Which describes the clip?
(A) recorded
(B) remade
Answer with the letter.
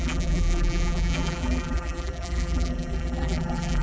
B